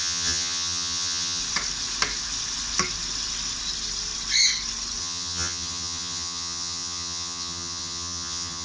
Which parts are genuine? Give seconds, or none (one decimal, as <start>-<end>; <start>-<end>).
1.4-5.0